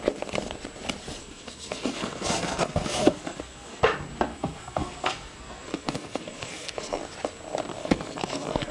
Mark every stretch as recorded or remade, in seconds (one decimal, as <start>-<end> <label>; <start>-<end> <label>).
0.0-1.2 recorded; 1.2-3.8 remade; 3.8-4.3 recorded; 4.3-7.0 remade; 7.0-7.8 recorded; 7.8-8.7 remade